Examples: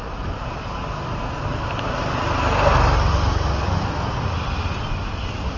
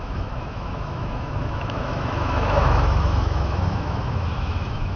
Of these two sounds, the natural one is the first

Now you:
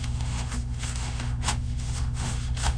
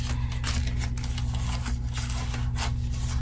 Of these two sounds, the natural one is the second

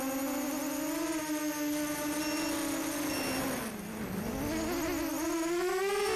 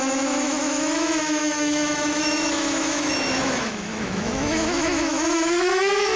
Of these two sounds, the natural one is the first